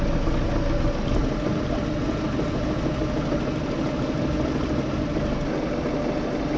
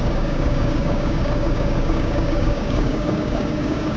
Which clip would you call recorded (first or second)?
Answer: first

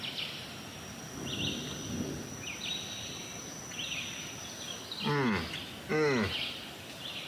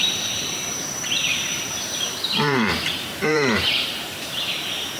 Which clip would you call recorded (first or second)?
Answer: first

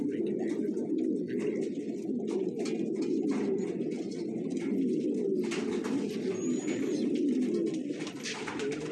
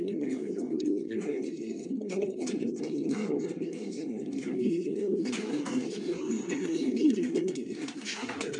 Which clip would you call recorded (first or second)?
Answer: first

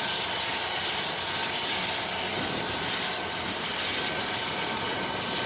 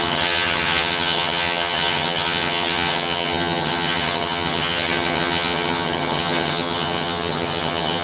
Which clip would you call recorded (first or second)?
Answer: first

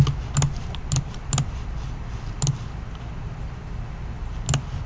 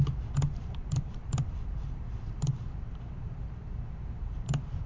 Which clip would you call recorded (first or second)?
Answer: first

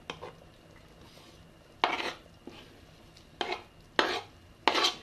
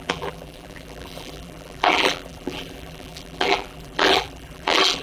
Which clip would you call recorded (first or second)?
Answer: first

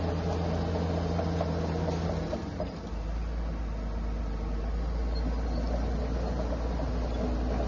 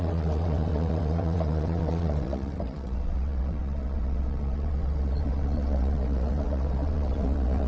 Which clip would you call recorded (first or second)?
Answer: first